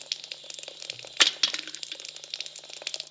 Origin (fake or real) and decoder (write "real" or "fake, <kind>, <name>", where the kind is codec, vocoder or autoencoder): real